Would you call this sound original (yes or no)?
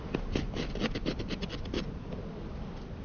yes